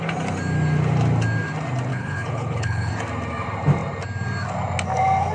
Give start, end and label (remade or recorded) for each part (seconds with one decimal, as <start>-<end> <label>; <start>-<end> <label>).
0.0-1.9 recorded; 1.9-2.9 remade; 2.9-5.3 recorded